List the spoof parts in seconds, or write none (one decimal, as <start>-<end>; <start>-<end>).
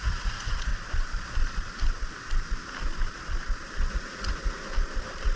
0.0-0.7; 3.9-4.7